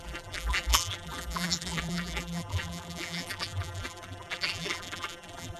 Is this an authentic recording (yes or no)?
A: no